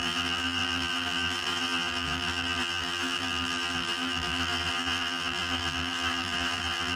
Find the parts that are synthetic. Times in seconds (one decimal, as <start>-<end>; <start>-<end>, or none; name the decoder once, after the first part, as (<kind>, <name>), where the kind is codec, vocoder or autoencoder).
0.0-7.0 (vocoder, BigVGAN v2)